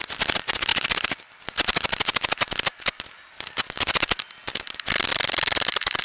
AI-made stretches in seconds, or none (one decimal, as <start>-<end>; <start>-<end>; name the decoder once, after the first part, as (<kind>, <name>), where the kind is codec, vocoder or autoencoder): none